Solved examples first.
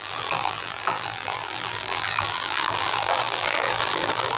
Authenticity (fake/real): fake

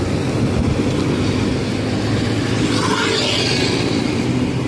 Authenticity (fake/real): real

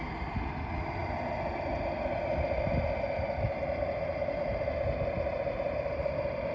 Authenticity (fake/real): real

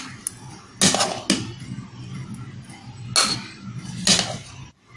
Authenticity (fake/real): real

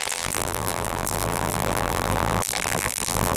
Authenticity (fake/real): fake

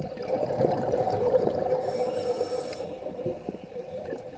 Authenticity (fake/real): fake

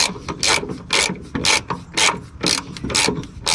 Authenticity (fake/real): real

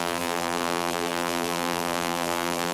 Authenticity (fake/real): fake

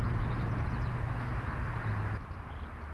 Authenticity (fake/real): real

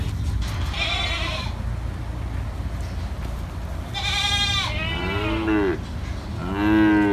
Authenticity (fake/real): real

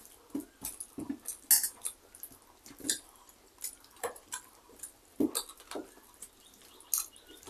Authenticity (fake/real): real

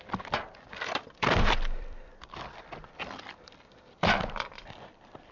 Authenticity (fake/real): fake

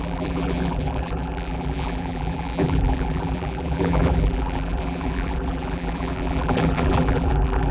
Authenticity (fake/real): fake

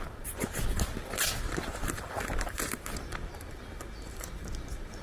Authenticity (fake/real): real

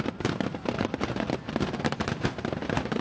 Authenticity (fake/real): fake